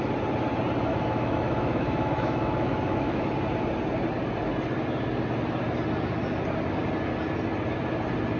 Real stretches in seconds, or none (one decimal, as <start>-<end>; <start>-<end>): 0.0-0.9; 3.3-8.4